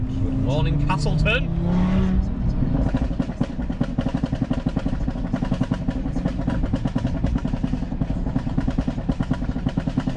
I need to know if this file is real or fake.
real